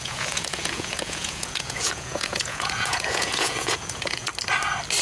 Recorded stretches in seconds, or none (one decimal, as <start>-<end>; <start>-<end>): 4.3-5.0